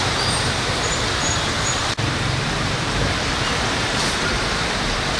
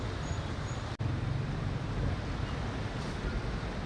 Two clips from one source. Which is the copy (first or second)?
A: first